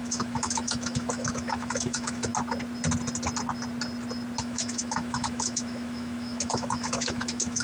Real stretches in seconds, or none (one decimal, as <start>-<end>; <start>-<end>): 2.3-4.4